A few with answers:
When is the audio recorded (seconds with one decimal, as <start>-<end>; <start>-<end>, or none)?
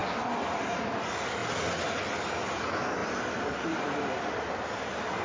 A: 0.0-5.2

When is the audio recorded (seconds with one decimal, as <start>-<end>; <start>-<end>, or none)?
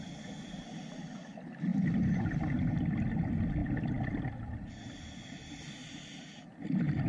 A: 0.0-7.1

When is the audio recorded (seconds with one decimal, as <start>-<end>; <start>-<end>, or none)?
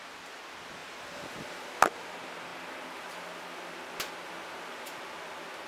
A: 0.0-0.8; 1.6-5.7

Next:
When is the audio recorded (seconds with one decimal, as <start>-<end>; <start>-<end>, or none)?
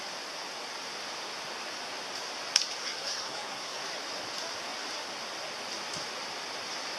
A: 0.0-2.8; 3.8-7.0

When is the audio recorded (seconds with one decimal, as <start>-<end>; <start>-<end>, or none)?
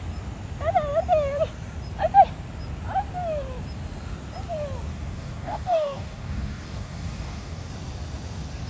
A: 0.0-4.9; 7.7-8.7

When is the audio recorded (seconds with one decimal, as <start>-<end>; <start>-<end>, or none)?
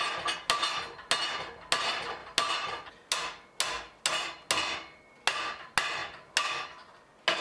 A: 0.0-7.4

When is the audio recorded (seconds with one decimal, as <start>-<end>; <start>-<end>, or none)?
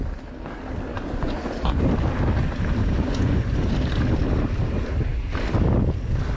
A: 0.0-0.9; 1.8-2.8; 3.7-6.4